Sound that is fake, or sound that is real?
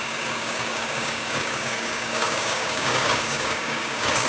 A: fake